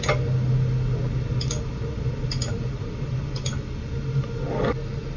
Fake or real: real